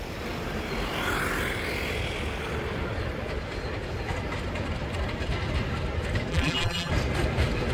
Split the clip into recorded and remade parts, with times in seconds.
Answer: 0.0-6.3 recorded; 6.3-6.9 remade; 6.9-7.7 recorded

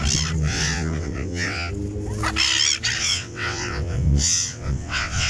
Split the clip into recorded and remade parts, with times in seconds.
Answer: 0.0-0.4 recorded; 0.4-1.7 remade; 1.7-3.0 recorded; 3.0-5.3 remade

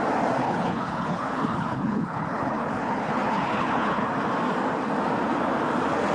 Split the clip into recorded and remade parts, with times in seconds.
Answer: 0.0-0.4 recorded; 0.4-4.1 remade; 4.1-6.1 recorded

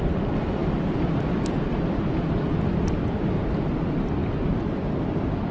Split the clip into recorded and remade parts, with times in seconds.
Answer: 0.0-0.6 recorded; 0.6-2.0 remade; 2.0-4.2 recorded; 4.2-4.8 remade; 4.8-5.5 recorded

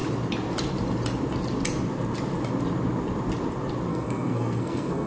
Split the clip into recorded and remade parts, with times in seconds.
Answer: 0.0-3.9 recorded; 3.9-5.1 remade

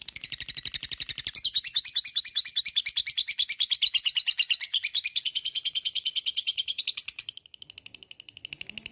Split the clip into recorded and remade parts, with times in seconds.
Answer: 0.0-4.7 recorded; 4.7-6.8 remade; 6.8-8.9 recorded

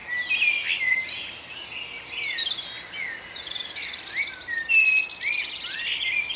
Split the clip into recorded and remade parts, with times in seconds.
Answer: 0.0-6.4 recorded